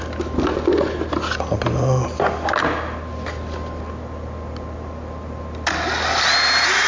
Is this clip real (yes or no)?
yes